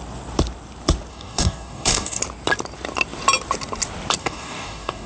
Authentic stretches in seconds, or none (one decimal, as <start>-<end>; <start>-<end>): 0.0-1.1; 2.2-4.2

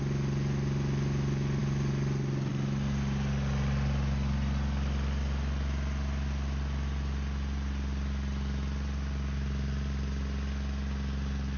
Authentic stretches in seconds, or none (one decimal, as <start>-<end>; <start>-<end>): 0.0-11.6

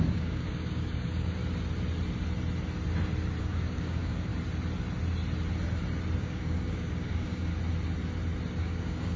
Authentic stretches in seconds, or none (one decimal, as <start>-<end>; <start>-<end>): 1.4-3.4; 4.3-6.2; 7.5-8.6

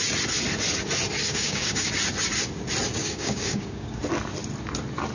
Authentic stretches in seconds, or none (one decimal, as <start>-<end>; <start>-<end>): 0.0-1.2; 1.9-3.0; 4.0-5.1

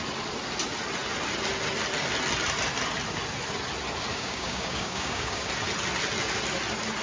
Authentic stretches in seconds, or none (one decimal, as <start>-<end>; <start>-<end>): 0.0-4.1; 5.5-7.0

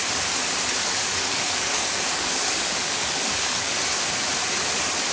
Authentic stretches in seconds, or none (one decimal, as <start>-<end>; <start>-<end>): 0.0-0.8; 3.8-5.1